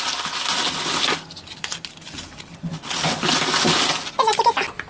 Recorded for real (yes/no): yes